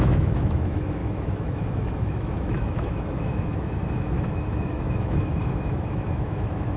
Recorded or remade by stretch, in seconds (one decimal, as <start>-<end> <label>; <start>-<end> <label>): 0.0-6.8 remade